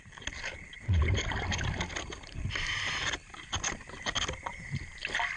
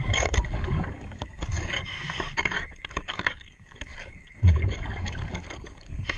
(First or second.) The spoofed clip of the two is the second